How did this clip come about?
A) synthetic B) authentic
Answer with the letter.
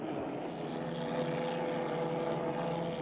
B